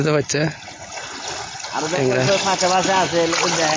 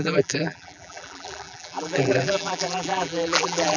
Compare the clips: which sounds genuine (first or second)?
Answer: first